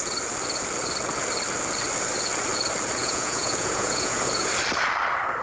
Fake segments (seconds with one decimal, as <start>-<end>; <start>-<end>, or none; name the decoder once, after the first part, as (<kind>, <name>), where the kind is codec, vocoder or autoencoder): 3.0-4.5 (vocoder, Vocos)